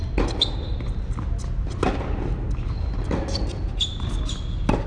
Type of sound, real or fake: real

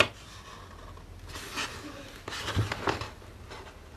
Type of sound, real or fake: real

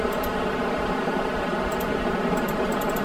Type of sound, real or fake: fake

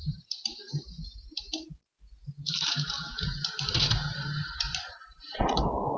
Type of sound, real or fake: fake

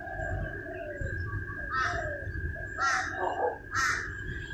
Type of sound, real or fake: real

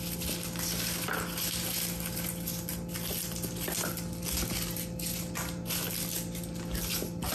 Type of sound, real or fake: real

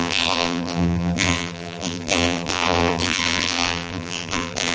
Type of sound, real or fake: fake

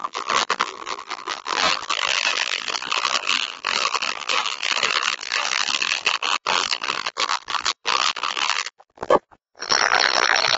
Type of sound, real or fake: fake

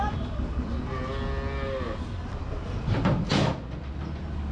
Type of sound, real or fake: real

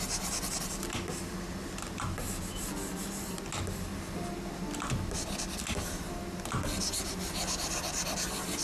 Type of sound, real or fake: real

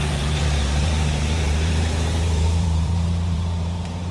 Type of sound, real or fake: fake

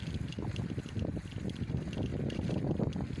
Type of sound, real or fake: real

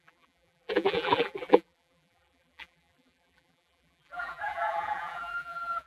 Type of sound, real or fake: fake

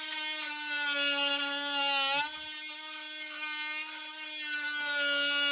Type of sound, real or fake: real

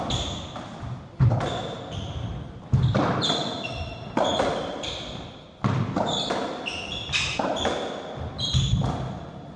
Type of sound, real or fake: real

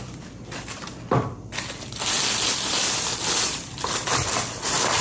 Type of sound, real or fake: fake